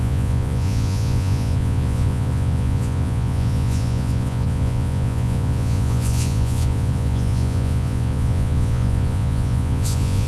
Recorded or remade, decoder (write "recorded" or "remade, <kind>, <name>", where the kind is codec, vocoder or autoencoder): remade, vocoder, Vocos